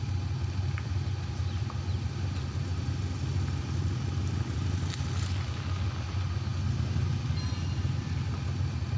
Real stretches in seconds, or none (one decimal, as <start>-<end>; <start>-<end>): 0.0-9.0